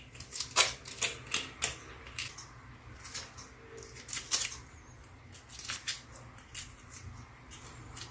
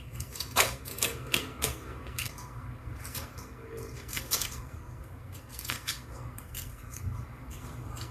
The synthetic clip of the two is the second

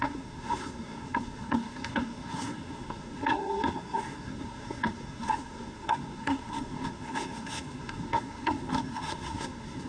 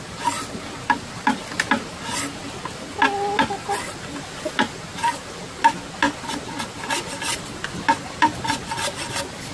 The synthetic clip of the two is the first